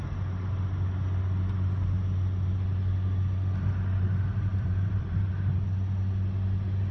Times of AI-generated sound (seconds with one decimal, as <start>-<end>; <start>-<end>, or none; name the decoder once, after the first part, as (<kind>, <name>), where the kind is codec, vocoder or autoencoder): 4.5-5.3 (vocoder, BigVGAN v2)